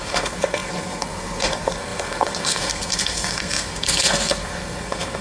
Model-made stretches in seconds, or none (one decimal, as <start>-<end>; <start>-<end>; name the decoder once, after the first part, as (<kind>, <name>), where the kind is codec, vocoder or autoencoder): 0.0-5.2 (codec, SNAC)